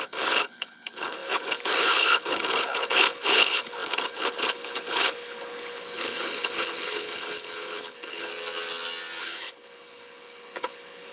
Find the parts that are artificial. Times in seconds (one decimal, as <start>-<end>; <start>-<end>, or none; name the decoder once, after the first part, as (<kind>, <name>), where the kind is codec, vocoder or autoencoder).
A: 0.0-8.3 (codec, HILCodec); 9.2-11.1